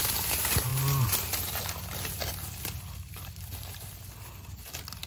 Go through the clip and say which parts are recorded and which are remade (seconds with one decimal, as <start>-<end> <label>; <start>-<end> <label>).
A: 0.0-5.1 recorded